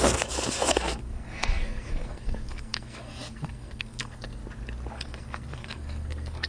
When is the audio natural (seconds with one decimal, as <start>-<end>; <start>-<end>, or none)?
4.4-4.9